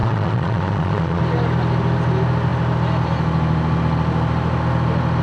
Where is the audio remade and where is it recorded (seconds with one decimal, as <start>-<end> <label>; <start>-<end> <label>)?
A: 0.0-1.2 remade; 1.2-5.2 recorded